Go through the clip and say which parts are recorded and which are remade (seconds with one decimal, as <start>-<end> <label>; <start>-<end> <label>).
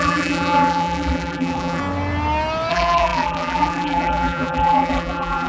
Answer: 0.0-1.8 remade; 1.8-2.7 recorded; 2.7-5.5 remade